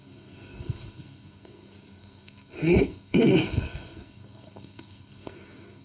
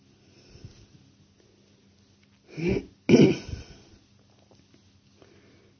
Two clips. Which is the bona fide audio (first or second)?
second